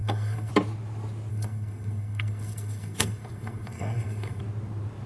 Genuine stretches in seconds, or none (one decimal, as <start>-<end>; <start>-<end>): 0.5-1.3; 4.4-5.1